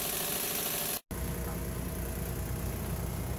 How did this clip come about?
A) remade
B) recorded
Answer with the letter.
B